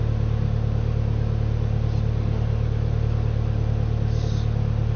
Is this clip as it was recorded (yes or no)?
yes